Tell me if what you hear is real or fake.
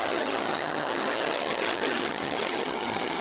fake